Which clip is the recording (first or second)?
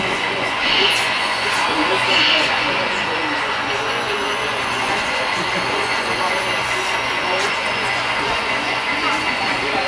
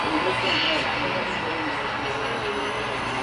second